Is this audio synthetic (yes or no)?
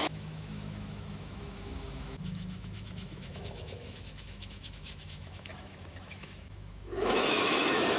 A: yes